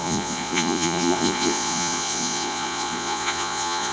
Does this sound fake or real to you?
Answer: fake